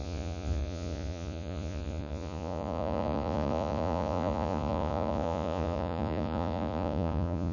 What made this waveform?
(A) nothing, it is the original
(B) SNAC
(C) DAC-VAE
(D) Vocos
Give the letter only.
D